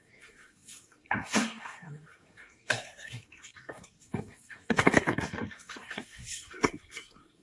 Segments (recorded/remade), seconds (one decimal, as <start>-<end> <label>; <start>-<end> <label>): 0.0-7.4 remade